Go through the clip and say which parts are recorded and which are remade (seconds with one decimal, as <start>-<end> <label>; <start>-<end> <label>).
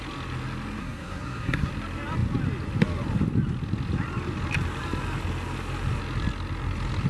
0.0-0.8 recorded; 0.8-1.7 remade; 1.7-7.1 recorded